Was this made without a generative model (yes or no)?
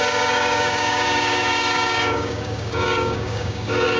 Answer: no